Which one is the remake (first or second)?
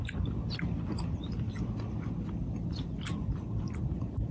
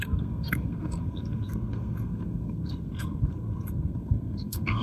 second